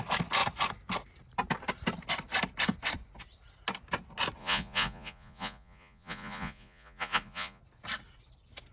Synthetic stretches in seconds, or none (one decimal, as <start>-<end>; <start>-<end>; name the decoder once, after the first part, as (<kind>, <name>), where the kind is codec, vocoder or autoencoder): 4.4-7.6 (vocoder, Vocos)